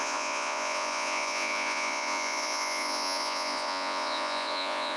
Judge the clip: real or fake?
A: fake